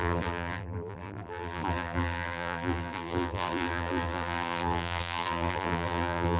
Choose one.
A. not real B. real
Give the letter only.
A